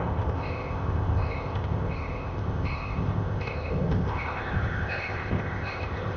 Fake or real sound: fake